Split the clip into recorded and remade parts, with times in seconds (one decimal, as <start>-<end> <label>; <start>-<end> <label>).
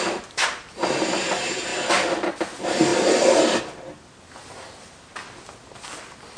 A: 0.0-6.4 recorded